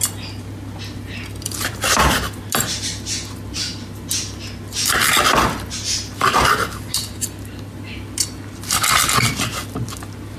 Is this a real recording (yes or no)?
yes